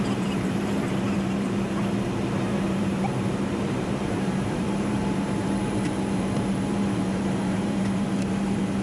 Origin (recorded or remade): remade